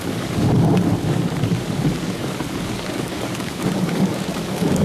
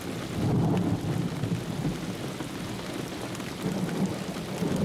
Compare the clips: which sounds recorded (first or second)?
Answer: second